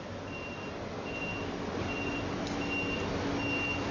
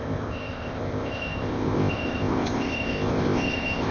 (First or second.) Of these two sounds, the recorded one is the first